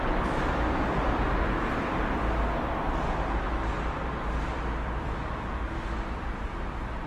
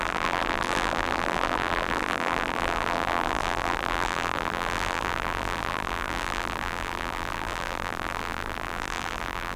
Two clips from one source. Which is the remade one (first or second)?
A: second